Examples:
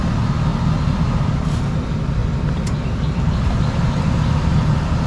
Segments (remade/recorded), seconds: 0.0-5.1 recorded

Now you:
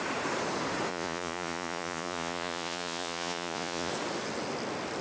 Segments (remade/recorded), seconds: 0.0-0.9 recorded; 0.9-3.9 remade; 3.9-5.0 recorded

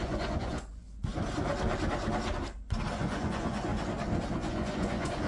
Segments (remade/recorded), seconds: 0.0-1.1 remade; 1.1-2.9 recorded; 2.9-3.7 remade; 3.7-4.3 recorded; 4.3-5.3 remade

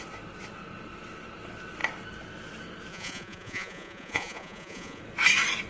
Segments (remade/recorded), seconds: 0.0-2.9 recorded; 2.9-5.0 remade; 5.0-5.7 recorded